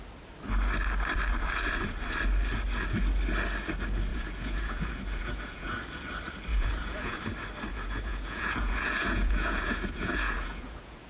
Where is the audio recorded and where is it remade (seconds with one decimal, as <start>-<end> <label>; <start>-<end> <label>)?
0.0-4.1 recorded; 4.1-6.1 remade; 6.1-6.5 recorded; 6.5-7.2 remade; 7.2-7.7 recorded; 7.7-11.1 remade